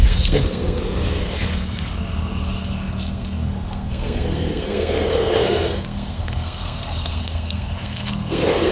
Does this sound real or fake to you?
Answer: fake